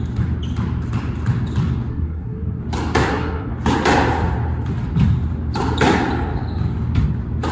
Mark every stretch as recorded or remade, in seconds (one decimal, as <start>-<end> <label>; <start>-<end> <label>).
0.0-1.9 recorded; 1.9-2.6 remade; 2.6-3.0 recorded; 3.0-3.5 remade; 3.5-7.5 recorded